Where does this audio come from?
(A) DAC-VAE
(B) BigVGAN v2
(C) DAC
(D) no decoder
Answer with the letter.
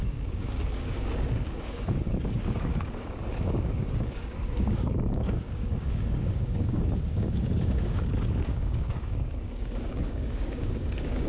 C